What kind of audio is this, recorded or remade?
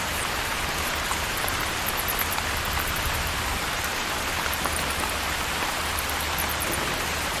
remade